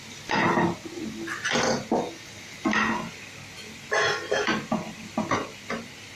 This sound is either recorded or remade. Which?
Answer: recorded